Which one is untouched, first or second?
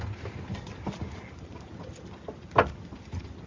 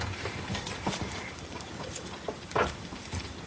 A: first